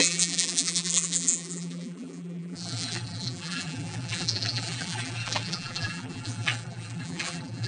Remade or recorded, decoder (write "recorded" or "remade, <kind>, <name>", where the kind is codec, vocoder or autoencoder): remade, vocoder, BigVGAN v2